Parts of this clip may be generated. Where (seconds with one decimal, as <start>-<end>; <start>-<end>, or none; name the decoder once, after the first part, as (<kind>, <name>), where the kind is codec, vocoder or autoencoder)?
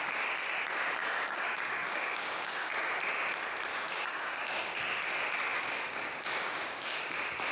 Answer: 1.0-2.7 (codec, DAC); 3.7-5.0; 5.5-7.1